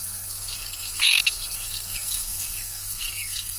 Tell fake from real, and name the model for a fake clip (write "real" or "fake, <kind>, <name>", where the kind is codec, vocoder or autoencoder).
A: fake, codec, SNAC